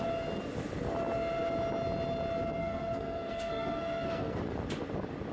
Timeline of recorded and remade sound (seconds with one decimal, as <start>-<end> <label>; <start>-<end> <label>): 0.0-2.6 recorded; 2.6-4.4 remade; 4.4-5.3 recorded